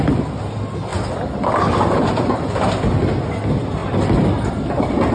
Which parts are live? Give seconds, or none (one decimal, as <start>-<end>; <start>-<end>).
0.0-5.1